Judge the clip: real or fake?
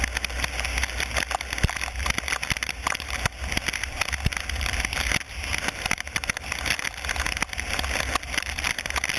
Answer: real